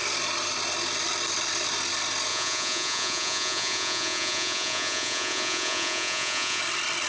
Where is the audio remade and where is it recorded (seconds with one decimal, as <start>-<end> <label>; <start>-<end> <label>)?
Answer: 0.0-2.3 recorded; 2.3-6.6 remade; 6.6-7.1 recorded